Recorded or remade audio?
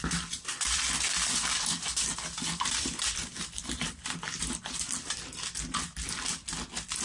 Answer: recorded